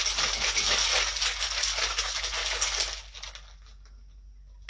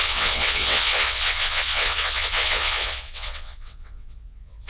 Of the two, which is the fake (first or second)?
second